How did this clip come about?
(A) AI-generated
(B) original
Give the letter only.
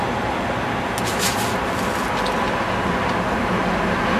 B